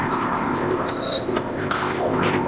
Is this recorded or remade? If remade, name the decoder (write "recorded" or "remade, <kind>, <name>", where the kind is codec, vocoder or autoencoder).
remade, codec, ZipCodec